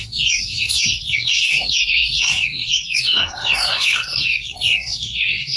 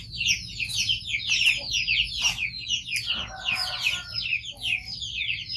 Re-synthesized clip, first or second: first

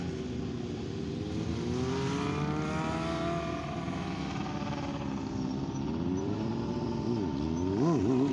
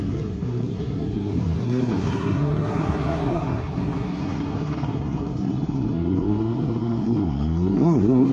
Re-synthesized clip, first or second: second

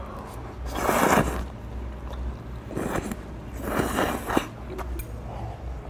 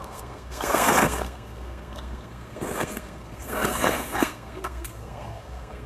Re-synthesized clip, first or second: second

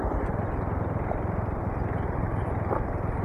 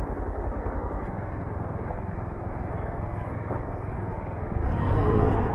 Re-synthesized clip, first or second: second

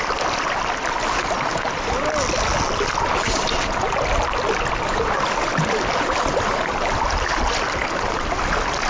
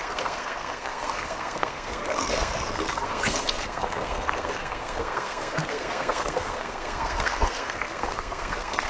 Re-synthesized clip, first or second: second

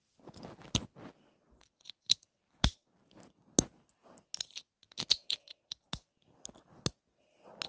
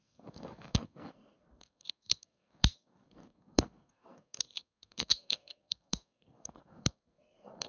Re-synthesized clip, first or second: second